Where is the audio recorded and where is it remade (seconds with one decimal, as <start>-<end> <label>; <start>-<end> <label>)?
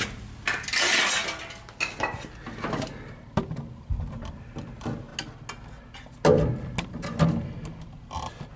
0.0-8.6 recorded